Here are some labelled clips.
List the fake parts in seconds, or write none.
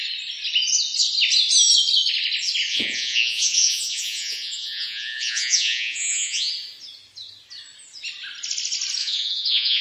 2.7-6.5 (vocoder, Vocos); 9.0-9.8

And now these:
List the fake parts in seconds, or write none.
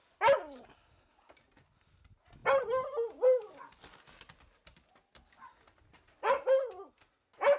none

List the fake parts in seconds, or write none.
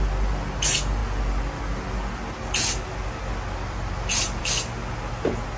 none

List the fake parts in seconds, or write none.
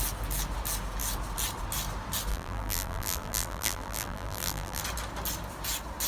2.3-4.8 (vocoder, BigVGAN v2)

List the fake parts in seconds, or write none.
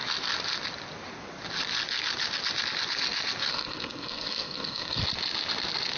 3.5-5.0 (codec, SNAC)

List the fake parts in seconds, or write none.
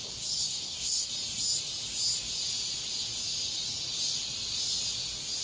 0.4-1.1 (codec, SNAC)